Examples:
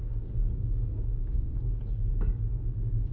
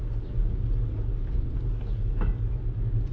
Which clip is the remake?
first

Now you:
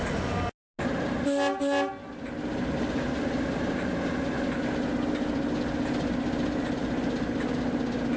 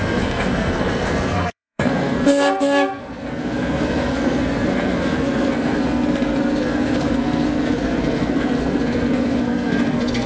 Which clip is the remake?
second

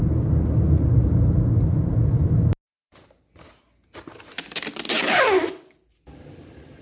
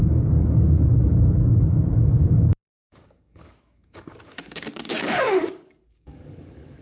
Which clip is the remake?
second